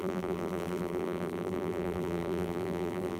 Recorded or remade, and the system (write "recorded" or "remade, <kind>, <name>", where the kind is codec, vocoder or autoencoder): remade, vocoder, BigVGAN v2